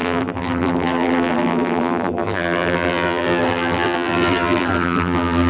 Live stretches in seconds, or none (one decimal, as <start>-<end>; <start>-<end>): none